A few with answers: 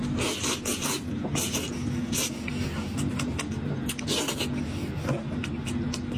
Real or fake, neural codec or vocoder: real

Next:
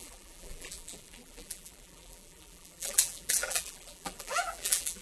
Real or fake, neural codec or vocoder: fake, vocoder, BigVGAN v2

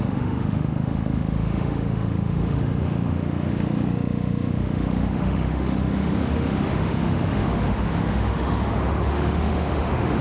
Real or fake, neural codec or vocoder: fake, autoencoder, DAC-VAE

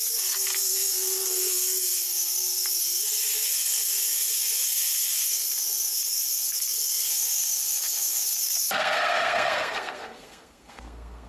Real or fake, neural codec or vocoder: fake, codec, SNAC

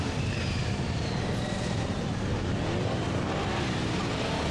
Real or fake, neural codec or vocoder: fake, vocoder, BigVGAN v2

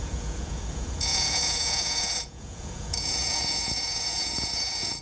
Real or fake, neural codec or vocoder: fake, vocoder, Vocos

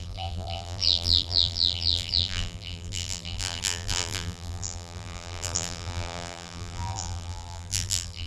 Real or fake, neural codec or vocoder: fake, vocoder, BigVGAN v2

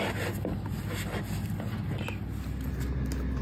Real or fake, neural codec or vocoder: real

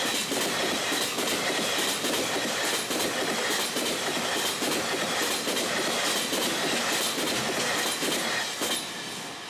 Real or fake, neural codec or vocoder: real